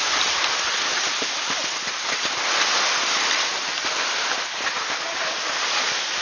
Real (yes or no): yes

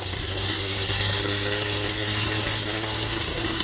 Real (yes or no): no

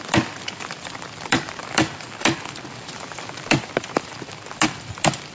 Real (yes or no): no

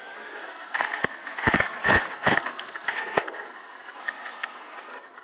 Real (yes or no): no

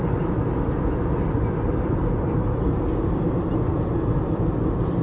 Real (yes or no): yes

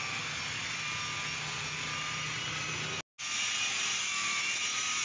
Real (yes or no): yes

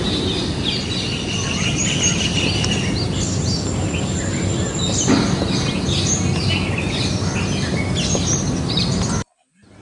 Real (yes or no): yes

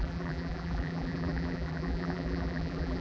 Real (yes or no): no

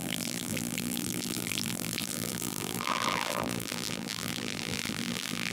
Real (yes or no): no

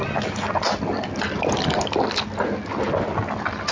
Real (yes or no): yes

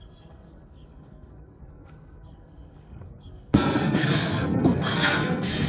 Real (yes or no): no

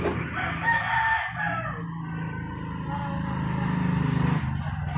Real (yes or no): yes